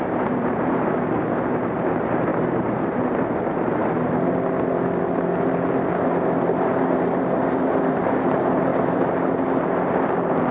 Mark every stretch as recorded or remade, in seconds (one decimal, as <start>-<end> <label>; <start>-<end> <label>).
0.0-3.8 remade; 3.8-5.9 recorded; 5.9-8.7 remade; 8.7-10.5 recorded